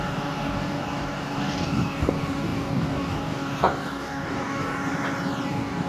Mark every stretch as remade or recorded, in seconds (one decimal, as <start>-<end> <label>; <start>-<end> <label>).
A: 0.0-4.9 remade; 4.9-5.5 recorded; 5.5-5.9 remade